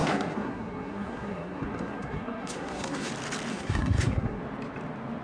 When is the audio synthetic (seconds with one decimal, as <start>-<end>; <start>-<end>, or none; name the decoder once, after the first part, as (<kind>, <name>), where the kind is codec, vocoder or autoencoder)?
0.0-3.1 (codec, SNAC); 3.5-4.4